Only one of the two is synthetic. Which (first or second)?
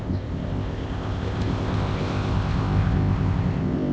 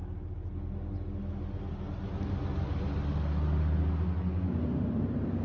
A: first